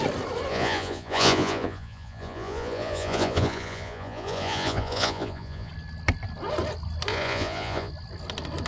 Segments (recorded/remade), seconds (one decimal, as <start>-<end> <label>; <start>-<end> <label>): 0.0-0.5 recorded; 0.5-5.7 remade; 5.7-7.1 recorded; 7.1-7.9 remade; 7.9-8.7 recorded